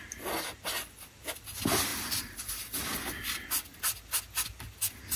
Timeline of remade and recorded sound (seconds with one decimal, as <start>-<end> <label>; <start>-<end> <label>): 0.0-5.2 recorded